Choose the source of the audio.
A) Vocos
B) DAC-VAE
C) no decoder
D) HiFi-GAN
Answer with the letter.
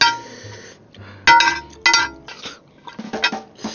C